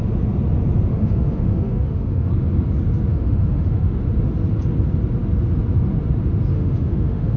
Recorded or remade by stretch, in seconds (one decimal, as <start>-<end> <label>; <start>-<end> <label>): 0.0-0.9 recorded; 0.9-2.3 remade; 2.3-3.1 recorded; 3.1-4.0 remade; 4.0-6.5 recorded; 6.5-7.4 remade